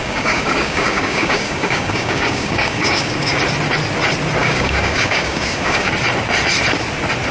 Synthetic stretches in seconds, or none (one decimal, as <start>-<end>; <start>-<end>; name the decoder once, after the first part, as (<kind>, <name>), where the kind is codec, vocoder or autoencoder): 0.0-3.4 (codec, DAC); 4.4-5.9